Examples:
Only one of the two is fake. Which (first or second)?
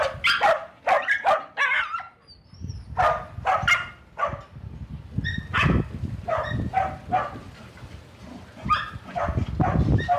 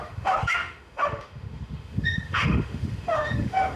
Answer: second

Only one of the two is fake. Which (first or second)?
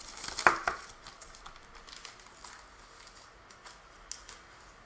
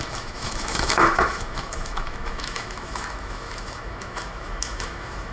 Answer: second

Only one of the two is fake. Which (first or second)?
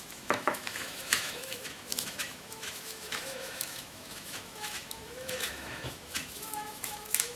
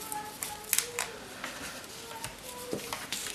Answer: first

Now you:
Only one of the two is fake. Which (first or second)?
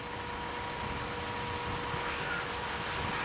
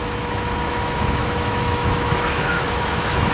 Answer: second